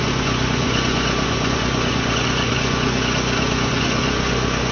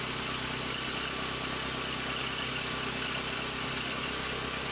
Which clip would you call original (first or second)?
second